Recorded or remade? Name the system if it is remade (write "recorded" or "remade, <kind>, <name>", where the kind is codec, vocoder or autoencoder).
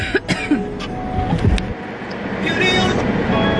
recorded